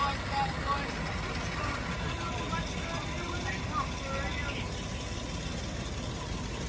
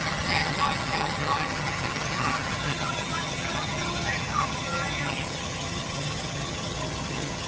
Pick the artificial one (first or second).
second